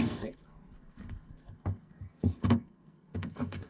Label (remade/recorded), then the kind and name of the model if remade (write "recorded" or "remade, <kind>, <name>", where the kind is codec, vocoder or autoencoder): remade, codec, SNAC